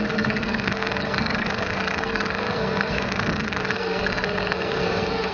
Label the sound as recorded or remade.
remade